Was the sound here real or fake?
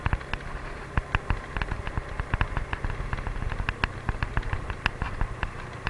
real